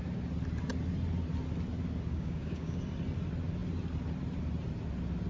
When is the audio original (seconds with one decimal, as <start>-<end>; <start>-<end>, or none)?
0.0-2.1; 2.8-5.3